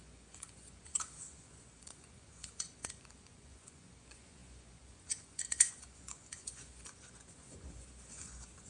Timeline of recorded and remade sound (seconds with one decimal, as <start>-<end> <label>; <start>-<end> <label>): 0.0-8.7 remade